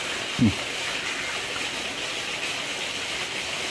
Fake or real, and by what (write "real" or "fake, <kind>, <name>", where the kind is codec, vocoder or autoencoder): real